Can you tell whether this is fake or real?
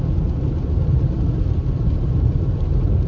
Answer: fake